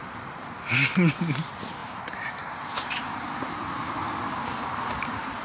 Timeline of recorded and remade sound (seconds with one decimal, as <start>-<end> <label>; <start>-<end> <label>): 0.0-1.8 recorded; 1.8-3.9 remade; 3.9-4.5 recorded; 4.5-5.4 remade